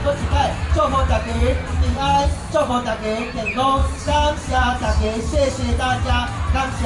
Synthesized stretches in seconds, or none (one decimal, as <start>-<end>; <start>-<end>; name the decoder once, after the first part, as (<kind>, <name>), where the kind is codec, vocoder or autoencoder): 0.0-2.7 (vocoder, BigVGAN v2); 3.8-5.5